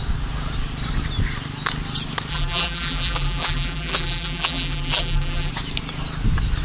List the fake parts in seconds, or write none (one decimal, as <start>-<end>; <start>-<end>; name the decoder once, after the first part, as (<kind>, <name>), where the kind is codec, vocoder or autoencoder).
2.3-5.5 (vocoder, BigVGAN v2)